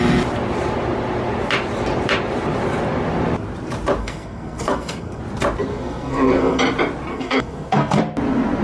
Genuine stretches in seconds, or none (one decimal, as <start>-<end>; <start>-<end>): 0.0-4.0; 5.2-5.7; 6.6-7.1; 8.0-8.6